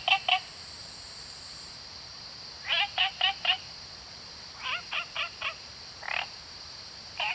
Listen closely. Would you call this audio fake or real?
fake